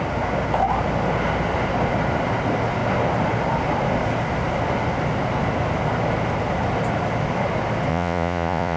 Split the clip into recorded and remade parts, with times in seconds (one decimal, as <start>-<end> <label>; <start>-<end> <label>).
0.0-7.9 recorded; 7.9-8.8 remade